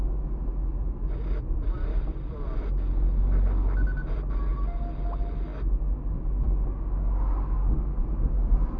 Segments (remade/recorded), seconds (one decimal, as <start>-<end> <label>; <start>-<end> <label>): 0.0-8.8 recorded

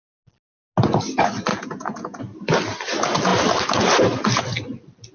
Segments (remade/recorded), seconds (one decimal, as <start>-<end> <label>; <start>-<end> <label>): 0.0-1.5 recorded; 1.5-2.2 remade; 2.2-5.1 recorded

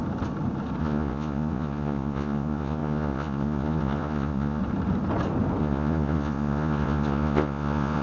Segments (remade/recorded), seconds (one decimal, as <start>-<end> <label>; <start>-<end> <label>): 0.0-0.8 recorded; 0.8-4.6 remade; 4.6-5.6 recorded; 5.6-8.0 remade

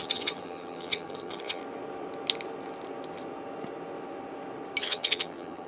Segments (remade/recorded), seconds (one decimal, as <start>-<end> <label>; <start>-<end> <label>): 0.0-1.6 remade; 1.6-4.8 recorded; 4.8-5.7 remade

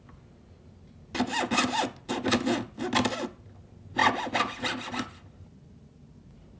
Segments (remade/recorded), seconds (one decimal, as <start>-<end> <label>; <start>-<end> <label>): 0.0-6.6 recorded

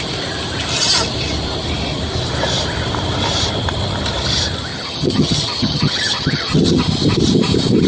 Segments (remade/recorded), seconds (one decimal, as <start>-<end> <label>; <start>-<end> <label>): 0.0-4.7 recorded; 4.7-6.8 remade; 6.8-7.9 recorded

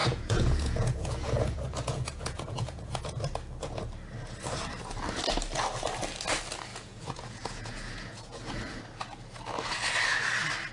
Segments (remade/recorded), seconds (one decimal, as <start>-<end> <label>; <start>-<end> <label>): 0.0-3.1 remade; 3.1-6.7 recorded; 6.7-8.8 remade; 8.8-10.7 recorded

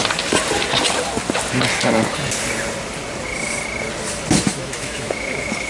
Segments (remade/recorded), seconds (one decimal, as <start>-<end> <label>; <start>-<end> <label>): 0.0-4.5 recorded; 4.5-5.7 remade